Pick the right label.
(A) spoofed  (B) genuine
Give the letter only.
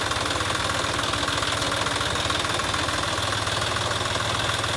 B